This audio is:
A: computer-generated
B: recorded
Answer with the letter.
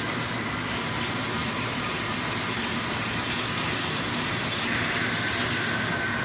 A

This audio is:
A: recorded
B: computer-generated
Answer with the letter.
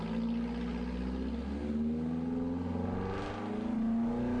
A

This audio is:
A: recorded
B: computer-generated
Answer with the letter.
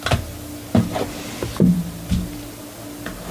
A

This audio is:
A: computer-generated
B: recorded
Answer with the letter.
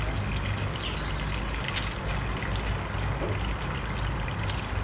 B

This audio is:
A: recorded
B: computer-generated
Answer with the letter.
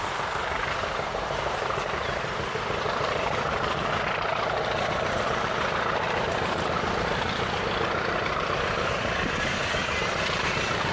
B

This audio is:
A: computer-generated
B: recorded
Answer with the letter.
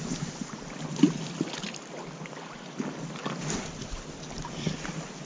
B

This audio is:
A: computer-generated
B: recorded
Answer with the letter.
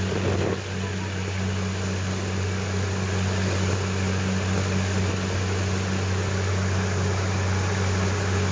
B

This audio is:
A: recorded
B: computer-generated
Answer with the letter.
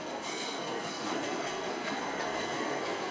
B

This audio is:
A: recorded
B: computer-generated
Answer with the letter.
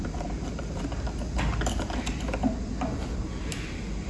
A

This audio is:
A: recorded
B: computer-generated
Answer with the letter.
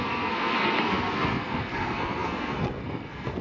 B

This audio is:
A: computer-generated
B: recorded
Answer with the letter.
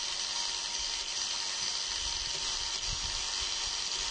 B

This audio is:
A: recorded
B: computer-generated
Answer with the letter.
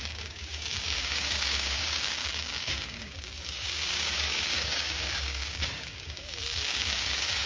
B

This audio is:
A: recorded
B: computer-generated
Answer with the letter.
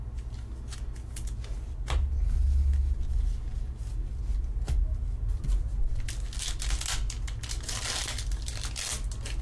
A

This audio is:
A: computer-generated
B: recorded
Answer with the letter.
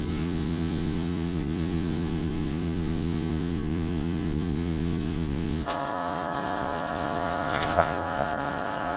A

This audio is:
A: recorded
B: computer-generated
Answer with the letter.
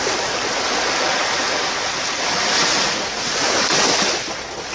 A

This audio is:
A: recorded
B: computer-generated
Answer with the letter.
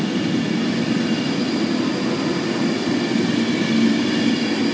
A